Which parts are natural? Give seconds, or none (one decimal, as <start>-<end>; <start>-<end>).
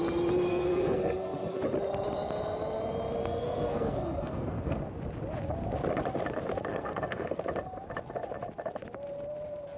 0.0-0.5; 1.6-3.2; 4.8-6.7; 7.4-9.8